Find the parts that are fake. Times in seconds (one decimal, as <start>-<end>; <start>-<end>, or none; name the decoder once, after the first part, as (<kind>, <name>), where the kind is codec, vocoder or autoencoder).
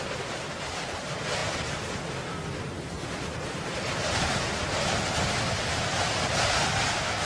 none